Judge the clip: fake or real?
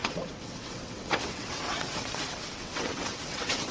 fake